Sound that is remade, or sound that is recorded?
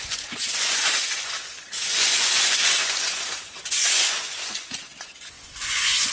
remade